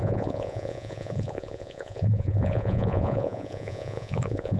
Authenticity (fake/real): fake